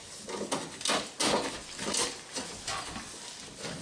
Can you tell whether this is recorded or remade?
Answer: recorded